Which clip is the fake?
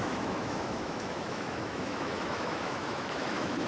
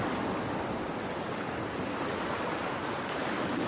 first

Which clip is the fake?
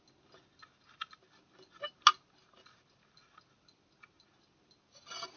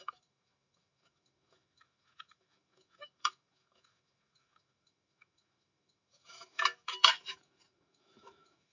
second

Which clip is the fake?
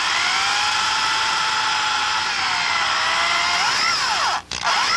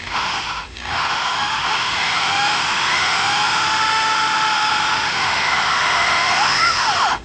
second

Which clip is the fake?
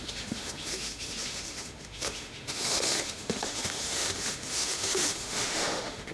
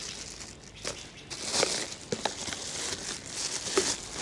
first